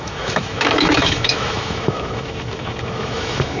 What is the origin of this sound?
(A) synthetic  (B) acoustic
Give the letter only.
A